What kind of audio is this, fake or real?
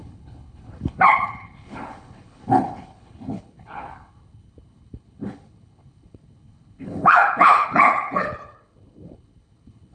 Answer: fake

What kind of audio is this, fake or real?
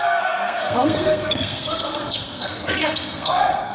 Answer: fake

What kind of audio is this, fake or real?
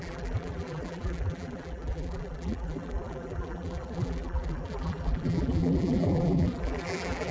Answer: fake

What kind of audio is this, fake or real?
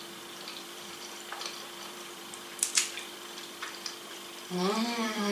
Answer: fake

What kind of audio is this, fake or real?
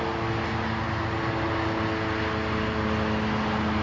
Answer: real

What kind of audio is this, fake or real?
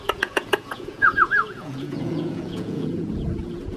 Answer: fake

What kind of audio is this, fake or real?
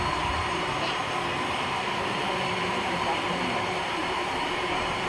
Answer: fake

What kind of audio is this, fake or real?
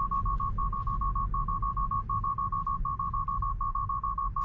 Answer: real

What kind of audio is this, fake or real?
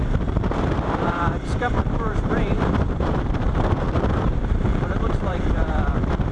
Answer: fake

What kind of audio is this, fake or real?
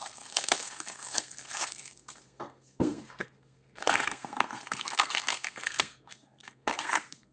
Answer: fake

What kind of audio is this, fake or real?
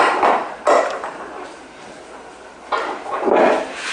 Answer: real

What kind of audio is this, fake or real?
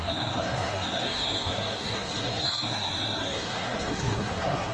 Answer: fake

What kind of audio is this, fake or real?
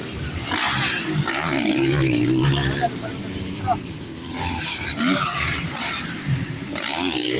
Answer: fake